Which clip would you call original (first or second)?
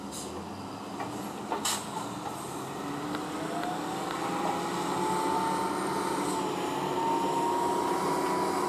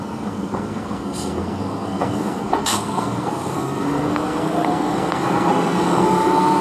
first